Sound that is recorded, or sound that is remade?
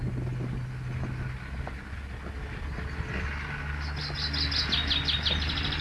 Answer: recorded